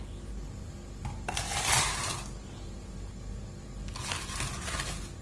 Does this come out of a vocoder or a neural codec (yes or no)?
no